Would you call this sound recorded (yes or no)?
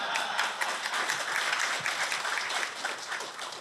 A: yes